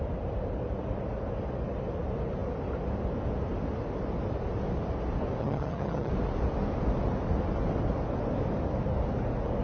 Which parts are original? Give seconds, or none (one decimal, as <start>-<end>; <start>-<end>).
0.0-5.4; 6.1-9.6